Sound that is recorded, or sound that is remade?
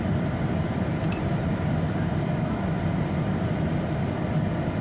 recorded